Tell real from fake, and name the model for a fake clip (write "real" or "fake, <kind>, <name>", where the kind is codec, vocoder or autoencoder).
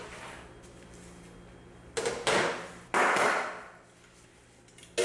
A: real